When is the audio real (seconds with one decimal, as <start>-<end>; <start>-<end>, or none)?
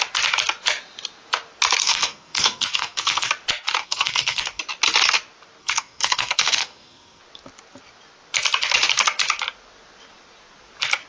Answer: 0.0-1.8; 3.3-3.8; 4.6-5.6; 7.2-11.1